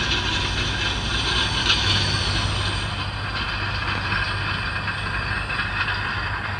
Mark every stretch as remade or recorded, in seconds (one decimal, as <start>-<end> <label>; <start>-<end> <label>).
0.0-1.6 recorded; 1.6-2.2 remade; 2.2-6.6 recorded